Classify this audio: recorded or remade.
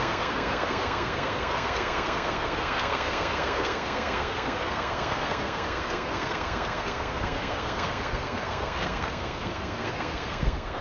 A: remade